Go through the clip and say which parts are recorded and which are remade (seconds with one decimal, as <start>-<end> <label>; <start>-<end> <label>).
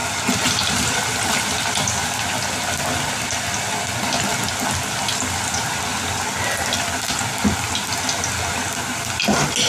0.0-9.7 recorded